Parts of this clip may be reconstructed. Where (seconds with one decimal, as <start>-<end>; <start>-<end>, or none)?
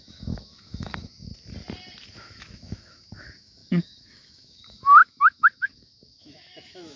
0.0-1.3; 2.1-7.0